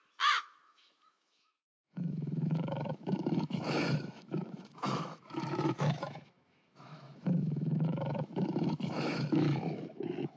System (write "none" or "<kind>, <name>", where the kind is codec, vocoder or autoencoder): autoencoder, DAC-VAE